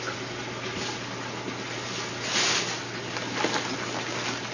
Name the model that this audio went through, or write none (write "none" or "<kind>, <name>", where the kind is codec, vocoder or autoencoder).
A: none